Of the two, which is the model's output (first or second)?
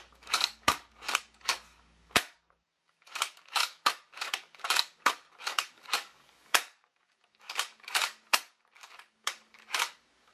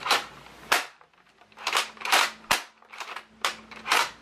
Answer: first